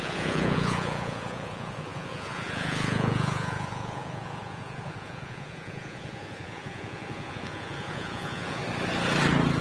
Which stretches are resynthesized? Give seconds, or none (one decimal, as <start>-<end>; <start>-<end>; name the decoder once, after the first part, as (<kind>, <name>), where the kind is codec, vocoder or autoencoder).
0.0-8.6 (vocoder, Vocos)